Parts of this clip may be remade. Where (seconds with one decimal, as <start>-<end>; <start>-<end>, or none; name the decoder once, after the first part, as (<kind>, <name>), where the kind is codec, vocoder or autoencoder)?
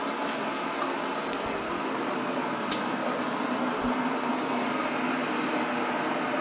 none